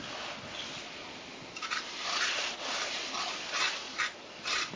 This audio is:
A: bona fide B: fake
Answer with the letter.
A